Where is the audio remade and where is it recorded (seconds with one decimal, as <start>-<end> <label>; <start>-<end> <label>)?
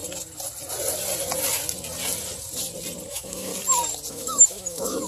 0.0-3.1 recorded; 3.1-3.5 remade; 3.5-4.1 recorded; 4.1-5.1 remade